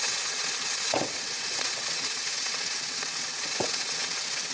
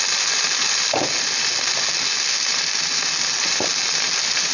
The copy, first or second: first